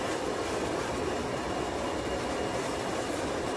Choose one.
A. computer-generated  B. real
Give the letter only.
B